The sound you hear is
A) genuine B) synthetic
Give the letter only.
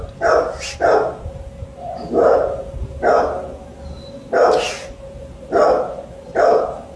A